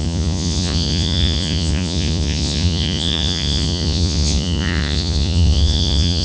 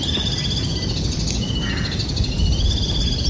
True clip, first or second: second